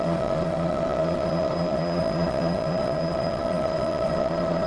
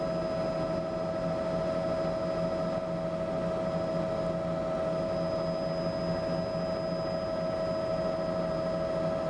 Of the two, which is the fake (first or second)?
first